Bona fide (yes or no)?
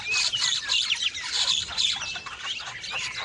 yes